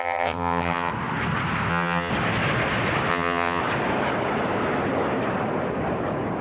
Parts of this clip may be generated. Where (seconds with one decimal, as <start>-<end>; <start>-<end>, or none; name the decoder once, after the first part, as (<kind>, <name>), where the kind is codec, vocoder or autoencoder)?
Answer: 0.0-0.9 (vocoder, HiFi-GAN); 1.7-2.1; 3.1-3.6